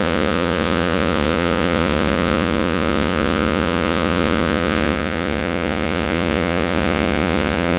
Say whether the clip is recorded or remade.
remade